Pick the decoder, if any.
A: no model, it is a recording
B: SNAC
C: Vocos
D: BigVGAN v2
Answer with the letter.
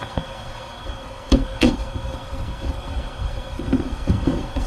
B